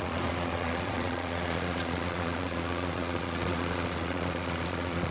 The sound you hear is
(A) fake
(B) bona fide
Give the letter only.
A